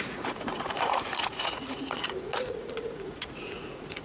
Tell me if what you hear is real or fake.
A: fake